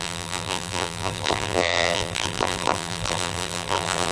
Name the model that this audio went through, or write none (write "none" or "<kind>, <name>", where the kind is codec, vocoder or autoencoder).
vocoder, BigVGAN v2